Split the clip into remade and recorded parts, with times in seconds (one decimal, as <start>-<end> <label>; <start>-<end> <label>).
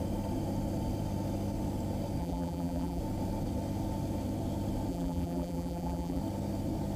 0.0-2.2 recorded; 2.2-3.0 remade; 3.0-4.9 recorded; 4.9-6.2 remade; 6.2-7.0 recorded